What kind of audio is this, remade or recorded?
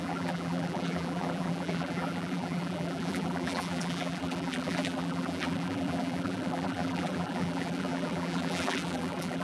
remade